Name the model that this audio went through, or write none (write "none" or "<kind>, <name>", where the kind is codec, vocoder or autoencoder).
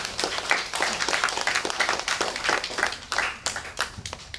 vocoder, BigVGAN v2